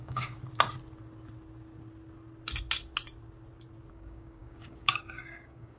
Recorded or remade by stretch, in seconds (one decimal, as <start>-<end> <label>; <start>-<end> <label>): 0.0-0.4 remade; 0.4-3.9 recorded; 3.9-5.8 remade